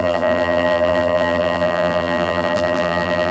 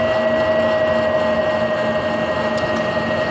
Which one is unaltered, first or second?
second